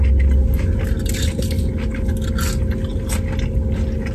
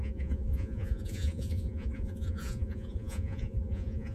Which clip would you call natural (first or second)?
first